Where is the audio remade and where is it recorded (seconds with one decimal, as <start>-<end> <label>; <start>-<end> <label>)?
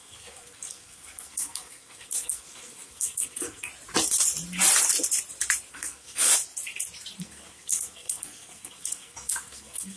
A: 0.0-3.7 remade; 3.7-5.7 recorded; 5.7-6.3 remade; 6.3-7.2 recorded; 7.2-10.0 remade